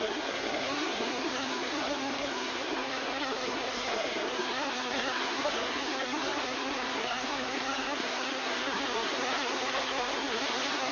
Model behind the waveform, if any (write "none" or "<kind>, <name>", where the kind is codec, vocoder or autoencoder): codec, SNAC